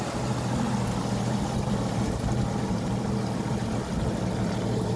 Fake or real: real